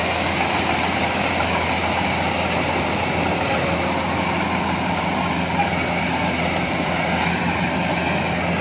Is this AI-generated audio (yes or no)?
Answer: no